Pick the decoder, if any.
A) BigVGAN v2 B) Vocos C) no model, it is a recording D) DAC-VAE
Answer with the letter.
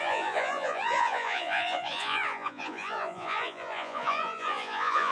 B